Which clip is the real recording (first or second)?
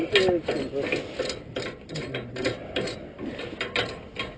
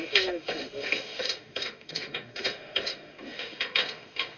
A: first